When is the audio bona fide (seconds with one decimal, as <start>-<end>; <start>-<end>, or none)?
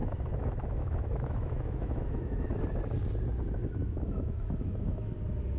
2.6-3.8; 5.1-5.6